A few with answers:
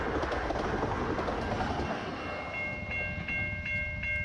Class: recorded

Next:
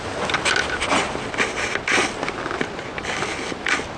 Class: recorded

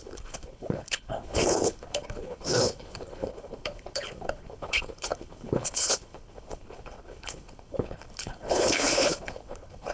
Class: remade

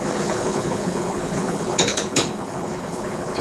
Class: remade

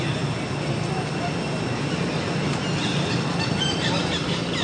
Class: recorded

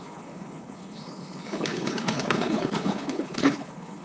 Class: remade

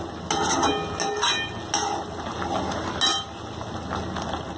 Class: recorded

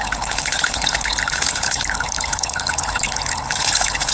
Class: remade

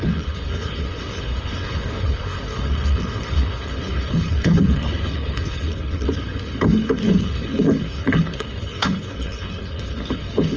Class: remade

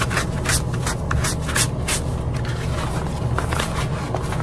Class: recorded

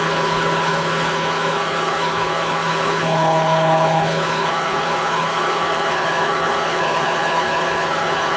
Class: remade